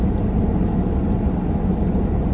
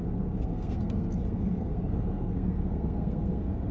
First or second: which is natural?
first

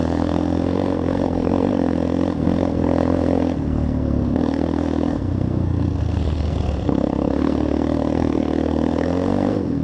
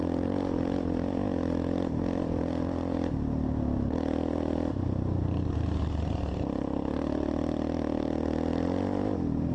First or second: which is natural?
second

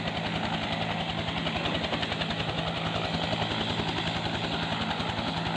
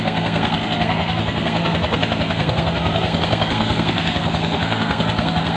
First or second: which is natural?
first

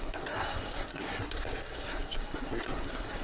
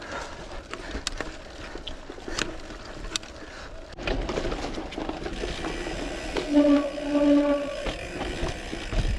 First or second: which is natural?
second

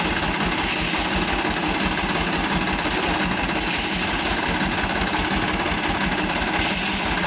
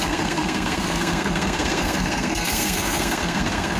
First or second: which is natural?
first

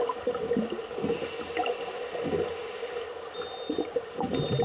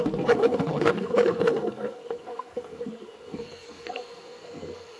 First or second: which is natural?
first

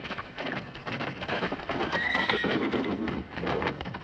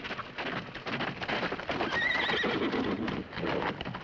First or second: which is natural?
second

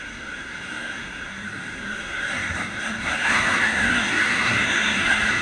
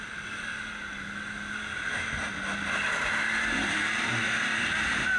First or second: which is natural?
second